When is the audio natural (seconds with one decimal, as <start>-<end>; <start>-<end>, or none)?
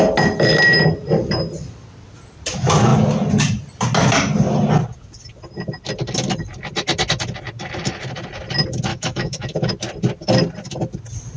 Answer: 0.0-8.9; 9.7-11.4